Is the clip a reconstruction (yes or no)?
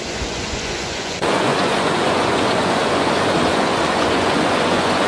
yes